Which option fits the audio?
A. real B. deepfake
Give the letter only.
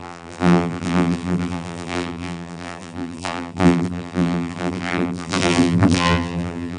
B